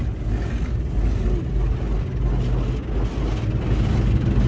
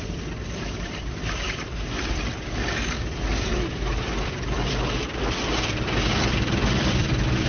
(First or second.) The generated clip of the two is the second